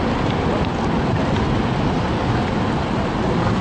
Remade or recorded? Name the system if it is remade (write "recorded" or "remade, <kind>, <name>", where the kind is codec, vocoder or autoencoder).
recorded